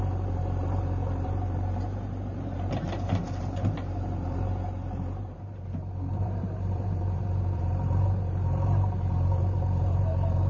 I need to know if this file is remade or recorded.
remade